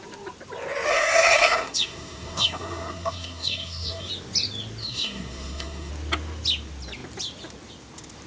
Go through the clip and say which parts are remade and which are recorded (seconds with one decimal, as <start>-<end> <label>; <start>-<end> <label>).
0.0-0.9 recorded; 0.9-4.1 remade; 4.1-4.8 recorded; 4.8-5.9 remade; 5.9-8.3 recorded